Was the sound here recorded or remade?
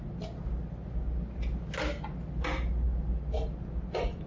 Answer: recorded